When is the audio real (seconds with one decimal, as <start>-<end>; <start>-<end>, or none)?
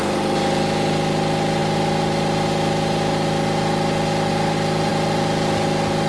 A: 0.0-6.1